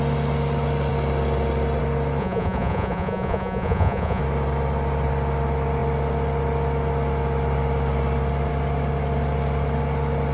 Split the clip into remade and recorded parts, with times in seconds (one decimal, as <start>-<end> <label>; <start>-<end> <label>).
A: 0.0-2.2 recorded; 2.2-4.2 remade; 4.2-10.3 recorded